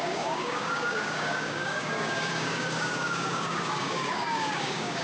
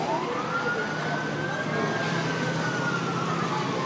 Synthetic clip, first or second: first